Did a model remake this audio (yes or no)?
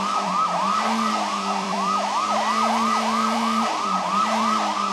yes